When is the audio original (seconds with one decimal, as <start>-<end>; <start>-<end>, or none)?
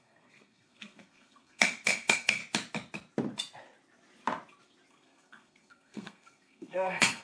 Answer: 2.4-4.9